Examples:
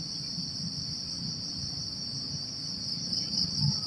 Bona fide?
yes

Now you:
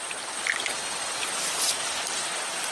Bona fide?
yes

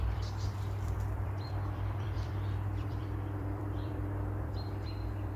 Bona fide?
no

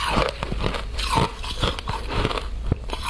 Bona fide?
no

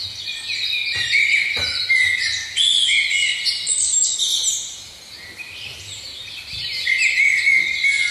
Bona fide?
yes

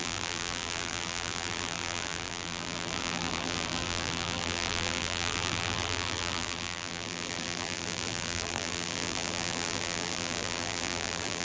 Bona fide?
no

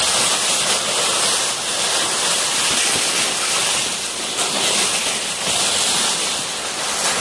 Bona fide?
yes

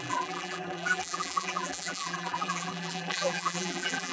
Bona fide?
no